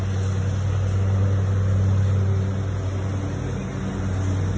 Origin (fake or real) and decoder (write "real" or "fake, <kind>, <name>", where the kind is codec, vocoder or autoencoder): real